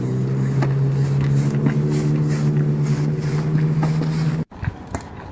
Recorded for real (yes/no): yes